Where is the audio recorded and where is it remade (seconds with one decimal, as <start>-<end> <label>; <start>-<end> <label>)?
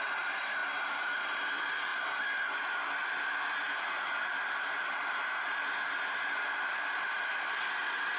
0.0-8.2 recorded